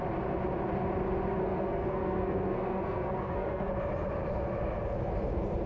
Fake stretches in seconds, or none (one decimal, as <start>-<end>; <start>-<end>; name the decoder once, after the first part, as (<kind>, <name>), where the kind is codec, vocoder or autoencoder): 1.4-3.7 (codec, SNAC)